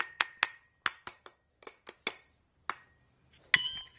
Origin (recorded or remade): recorded